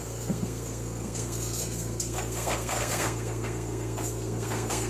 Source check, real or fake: fake